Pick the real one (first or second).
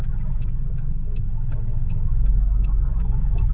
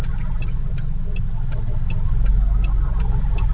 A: second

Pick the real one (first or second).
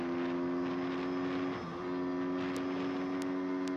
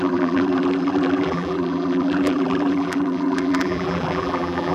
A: first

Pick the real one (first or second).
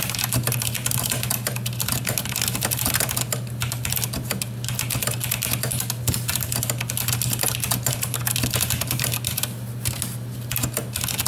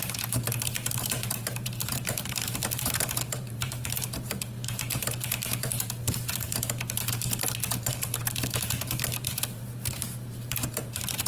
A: first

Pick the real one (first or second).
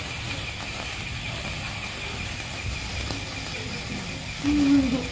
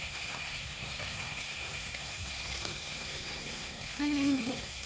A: first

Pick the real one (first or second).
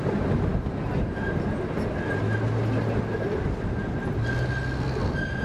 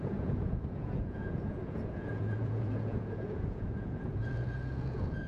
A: first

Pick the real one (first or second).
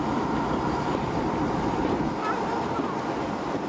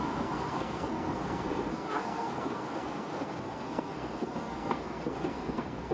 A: first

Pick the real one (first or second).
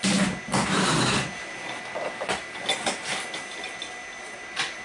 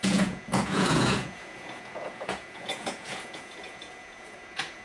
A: first